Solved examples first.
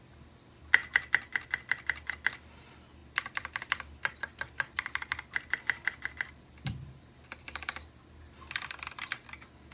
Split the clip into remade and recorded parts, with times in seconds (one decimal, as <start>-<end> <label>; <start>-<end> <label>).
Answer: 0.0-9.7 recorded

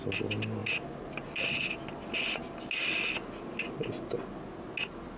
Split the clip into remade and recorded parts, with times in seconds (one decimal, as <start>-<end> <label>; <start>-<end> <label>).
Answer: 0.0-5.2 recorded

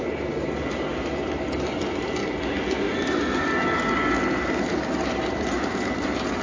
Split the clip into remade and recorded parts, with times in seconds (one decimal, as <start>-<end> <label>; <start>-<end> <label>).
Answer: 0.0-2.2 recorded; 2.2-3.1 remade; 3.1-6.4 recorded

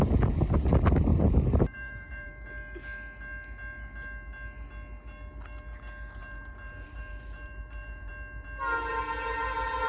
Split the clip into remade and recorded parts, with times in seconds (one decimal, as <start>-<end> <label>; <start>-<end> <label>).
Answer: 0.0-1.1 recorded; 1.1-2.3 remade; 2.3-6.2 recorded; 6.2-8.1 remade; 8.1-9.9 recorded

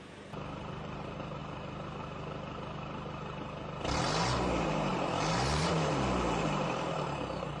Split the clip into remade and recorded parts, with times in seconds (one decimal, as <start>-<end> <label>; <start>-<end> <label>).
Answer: 0.0-1.4 remade; 1.4-4.2 recorded; 4.2-7.6 remade

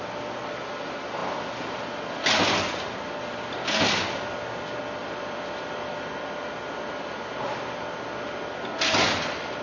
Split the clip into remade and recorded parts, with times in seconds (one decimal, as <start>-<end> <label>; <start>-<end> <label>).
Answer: 0.0-5.0 recorded; 5.0-6.1 remade; 6.1-9.6 recorded

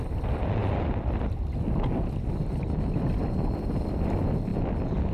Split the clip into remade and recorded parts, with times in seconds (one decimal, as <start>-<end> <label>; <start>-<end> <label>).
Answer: 0.0-4.5 remade; 4.5-5.1 recorded